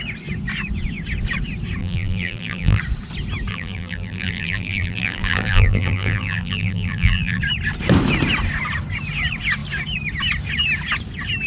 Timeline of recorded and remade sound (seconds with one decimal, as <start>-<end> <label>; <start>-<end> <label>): 0.0-1.8 recorded; 1.8-2.8 remade; 2.8-3.5 recorded; 3.5-7.4 remade; 7.4-11.5 recorded